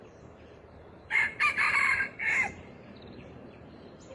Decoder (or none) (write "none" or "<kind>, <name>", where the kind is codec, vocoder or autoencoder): vocoder, BigVGAN v2